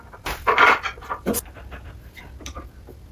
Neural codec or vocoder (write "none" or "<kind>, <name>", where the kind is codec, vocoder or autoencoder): vocoder, BigVGAN v2